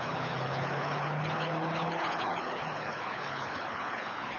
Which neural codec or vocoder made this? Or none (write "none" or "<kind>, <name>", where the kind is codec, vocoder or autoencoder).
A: codec, HILCodec